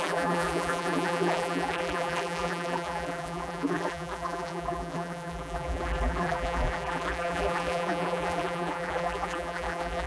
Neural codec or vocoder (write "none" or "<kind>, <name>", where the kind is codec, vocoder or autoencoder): vocoder, BigVGAN v2